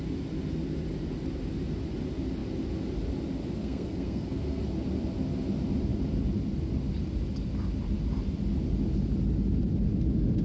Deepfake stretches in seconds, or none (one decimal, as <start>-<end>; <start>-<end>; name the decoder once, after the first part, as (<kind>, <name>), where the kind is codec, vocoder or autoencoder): 3.6-4.6 (codec, SNAC)